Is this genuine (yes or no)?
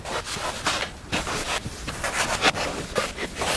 no